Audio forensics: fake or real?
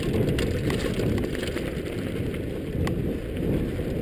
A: real